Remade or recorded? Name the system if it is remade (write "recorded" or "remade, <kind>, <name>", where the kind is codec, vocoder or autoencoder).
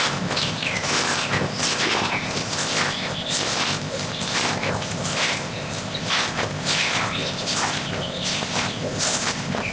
remade, codec, ZipCodec